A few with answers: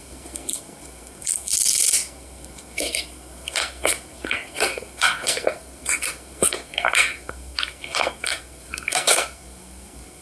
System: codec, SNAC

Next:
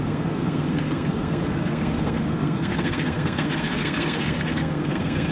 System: codec, SNAC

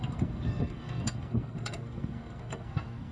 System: codec, SNAC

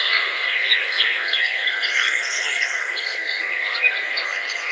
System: codec, SNAC